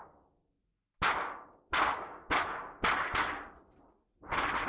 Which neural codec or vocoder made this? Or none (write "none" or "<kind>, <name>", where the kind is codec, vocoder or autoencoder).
none